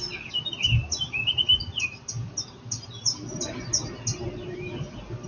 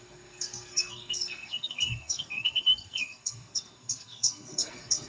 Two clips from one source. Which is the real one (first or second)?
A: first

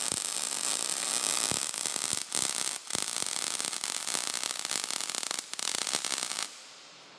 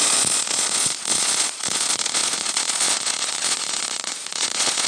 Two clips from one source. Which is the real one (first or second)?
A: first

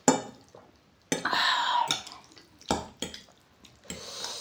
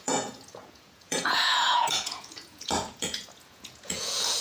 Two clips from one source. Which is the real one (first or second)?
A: first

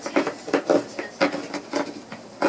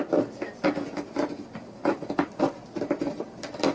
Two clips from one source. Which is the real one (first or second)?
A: first